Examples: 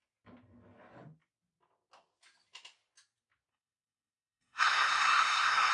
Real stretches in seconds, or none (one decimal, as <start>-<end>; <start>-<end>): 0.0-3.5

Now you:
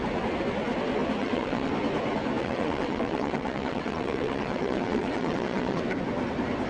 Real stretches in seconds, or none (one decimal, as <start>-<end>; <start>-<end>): 0.0-1.2; 1.7-2.4; 5.8-6.7

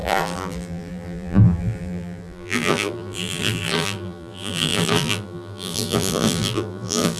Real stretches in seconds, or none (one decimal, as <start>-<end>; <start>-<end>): none